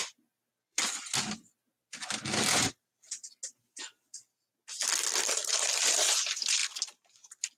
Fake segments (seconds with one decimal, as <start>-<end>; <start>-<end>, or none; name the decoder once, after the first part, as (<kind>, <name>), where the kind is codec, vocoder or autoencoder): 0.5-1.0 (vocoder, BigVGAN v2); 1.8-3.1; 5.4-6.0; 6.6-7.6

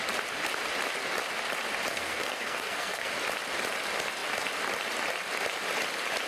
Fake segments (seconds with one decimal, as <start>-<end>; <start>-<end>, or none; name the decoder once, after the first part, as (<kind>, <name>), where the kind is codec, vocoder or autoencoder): 1.9-3.1 (codec, SNAC)

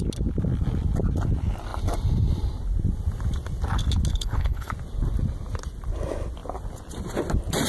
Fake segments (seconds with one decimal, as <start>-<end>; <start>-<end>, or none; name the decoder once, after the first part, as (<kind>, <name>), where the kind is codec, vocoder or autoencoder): 4.1-4.7 (codec, HILCodec)

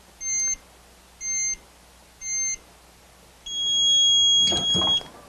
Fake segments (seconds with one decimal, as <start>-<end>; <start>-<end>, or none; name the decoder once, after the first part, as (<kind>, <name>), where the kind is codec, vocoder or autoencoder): none